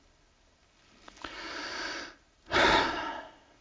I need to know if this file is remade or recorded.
recorded